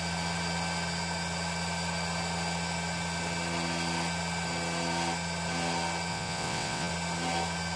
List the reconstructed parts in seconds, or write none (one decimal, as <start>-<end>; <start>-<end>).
6.1-6.9